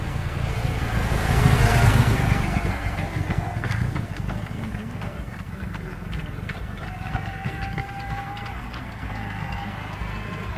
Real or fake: fake